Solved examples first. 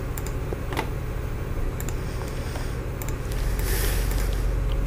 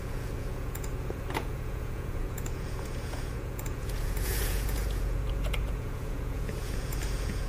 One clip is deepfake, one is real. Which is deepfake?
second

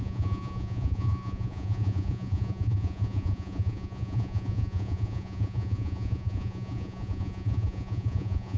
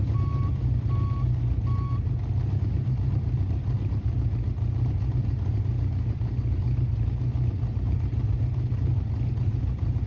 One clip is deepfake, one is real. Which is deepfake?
first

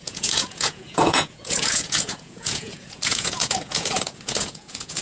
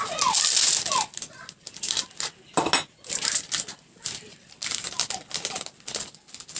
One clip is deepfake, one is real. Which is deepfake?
first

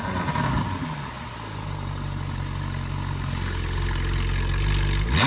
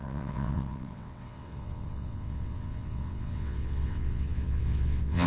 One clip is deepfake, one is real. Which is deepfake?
second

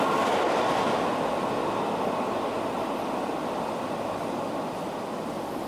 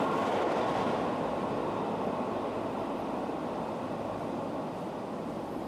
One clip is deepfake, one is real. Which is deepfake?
second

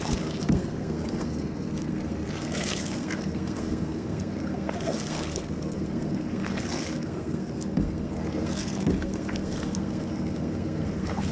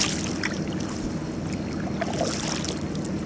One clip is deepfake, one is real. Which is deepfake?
first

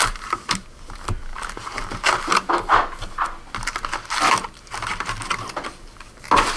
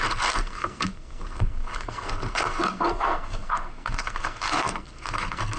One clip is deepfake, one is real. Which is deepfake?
second